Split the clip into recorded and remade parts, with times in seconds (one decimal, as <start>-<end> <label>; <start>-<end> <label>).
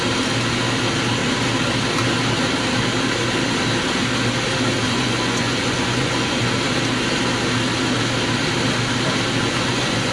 0.0-4.8 recorded; 4.8-6.5 remade; 6.5-9.4 recorded; 9.4-10.1 remade